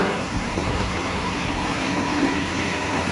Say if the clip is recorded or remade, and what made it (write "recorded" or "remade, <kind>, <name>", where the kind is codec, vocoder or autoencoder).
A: remade, codec, SNAC